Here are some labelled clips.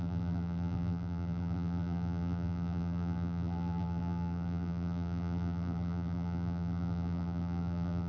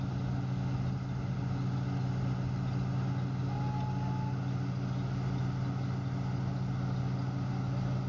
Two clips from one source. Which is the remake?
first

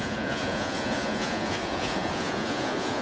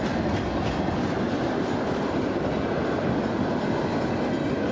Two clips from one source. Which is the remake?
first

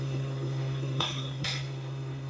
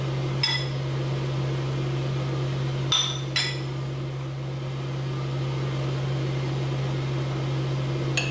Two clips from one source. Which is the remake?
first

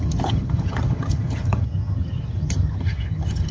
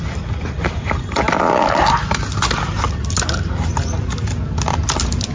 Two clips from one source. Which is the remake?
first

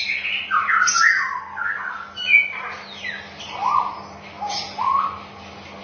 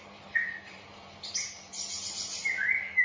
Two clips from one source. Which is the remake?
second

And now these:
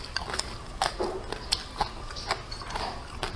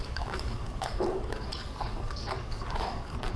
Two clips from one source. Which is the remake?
second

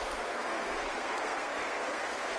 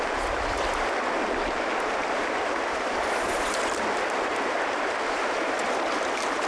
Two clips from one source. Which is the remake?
first